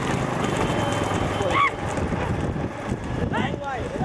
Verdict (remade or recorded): recorded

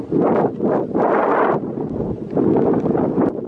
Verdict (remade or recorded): recorded